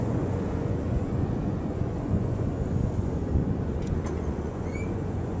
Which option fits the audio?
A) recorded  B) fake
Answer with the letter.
B